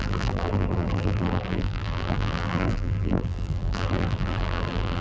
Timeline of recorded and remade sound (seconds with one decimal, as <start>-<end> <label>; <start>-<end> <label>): 0.0-5.0 remade

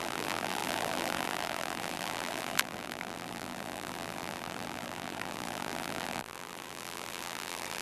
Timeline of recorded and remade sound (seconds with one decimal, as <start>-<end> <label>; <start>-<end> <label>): 0.0-7.8 remade

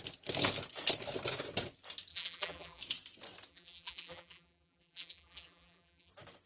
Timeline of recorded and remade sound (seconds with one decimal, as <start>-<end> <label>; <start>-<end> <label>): 0.0-2.1 recorded; 2.1-2.8 remade; 2.8-3.5 recorded; 3.5-6.1 remade; 6.1-6.5 recorded

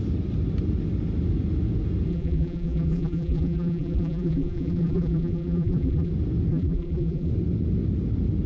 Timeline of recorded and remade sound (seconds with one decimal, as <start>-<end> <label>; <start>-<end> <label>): 0.0-2.1 recorded; 2.1-6.1 remade; 6.1-6.5 recorded; 6.5-7.3 remade; 7.3-8.5 recorded